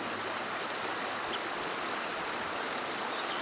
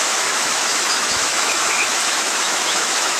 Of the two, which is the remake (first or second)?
second